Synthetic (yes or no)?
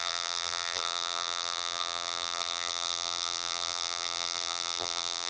yes